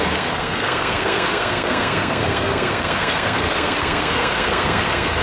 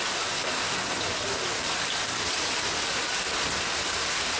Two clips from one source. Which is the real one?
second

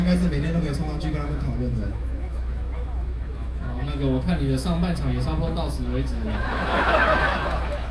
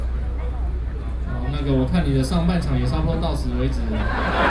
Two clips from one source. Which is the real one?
second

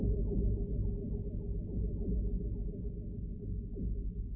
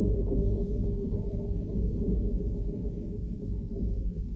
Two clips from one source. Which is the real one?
first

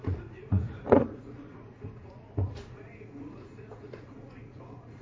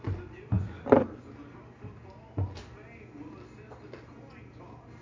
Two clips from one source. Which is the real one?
second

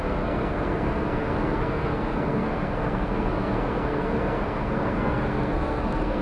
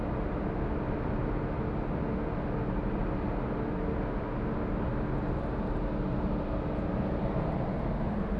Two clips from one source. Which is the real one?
second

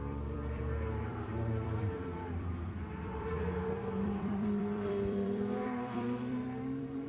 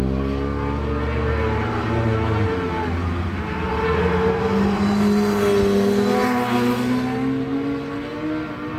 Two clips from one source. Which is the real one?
second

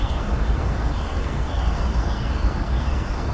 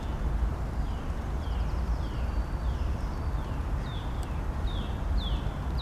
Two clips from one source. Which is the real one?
second